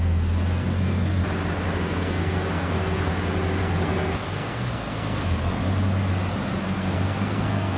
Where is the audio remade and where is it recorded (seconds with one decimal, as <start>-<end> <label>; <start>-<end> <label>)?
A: 0.0-1.2 remade; 1.2-1.8 recorded; 1.8-3.1 remade; 3.1-3.6 recorded; 3.6-5.6 remade; 5.6-6.6 recorded; 6.6-7.8 remade